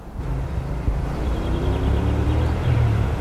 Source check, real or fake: fake